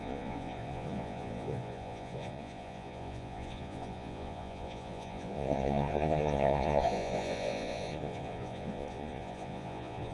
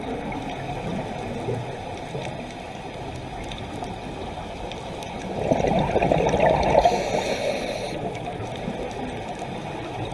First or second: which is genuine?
second